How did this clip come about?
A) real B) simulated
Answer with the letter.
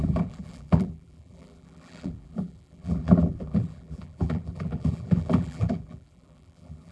B